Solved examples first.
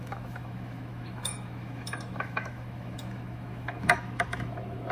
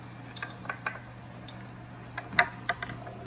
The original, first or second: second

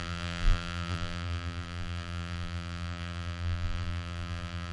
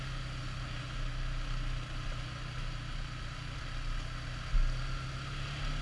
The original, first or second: second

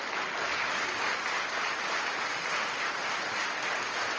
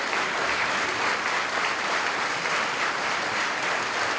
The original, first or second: first